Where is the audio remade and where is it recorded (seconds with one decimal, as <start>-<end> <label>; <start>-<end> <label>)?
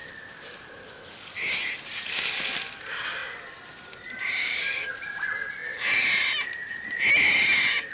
0.0-4.4 recorded; 4.4-4.9 remade; 4.9-7.9 recorded